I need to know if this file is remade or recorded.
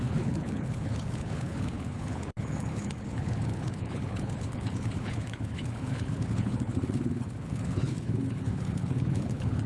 remade